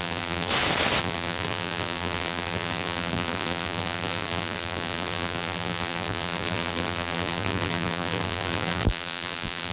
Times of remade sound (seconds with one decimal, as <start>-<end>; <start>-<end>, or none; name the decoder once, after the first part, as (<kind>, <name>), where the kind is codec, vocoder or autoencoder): 0.0-0.5 (vocoder, BigVGAN v2); 1.0-9.7